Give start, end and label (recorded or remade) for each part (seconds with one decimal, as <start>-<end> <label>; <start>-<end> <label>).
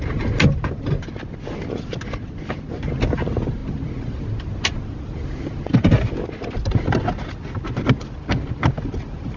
0.0-9.4 recorded